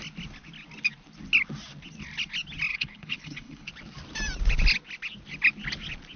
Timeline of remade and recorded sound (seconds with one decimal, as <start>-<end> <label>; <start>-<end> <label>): 0.0-2.7 recorded; 2.7-3.7 remade; 3.7-6.2 recorded